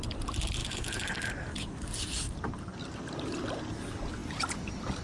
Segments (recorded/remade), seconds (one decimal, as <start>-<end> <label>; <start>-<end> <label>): 0.0-5.0 recorded